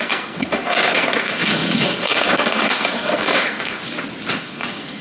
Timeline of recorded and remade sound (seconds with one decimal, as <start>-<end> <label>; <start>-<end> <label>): 0.0-3.8 remade; 3.8-4.3 recorded; 4.3-5.0 remade